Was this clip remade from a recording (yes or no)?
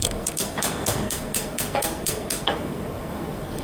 yes